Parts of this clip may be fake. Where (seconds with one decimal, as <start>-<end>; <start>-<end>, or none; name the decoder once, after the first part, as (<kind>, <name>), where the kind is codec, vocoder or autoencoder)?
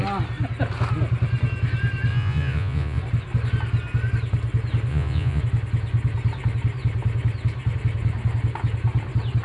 2.1-3.0 (vocoder, Vocos); 4.9-5.4